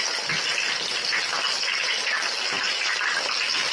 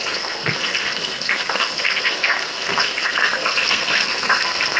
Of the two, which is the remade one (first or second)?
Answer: second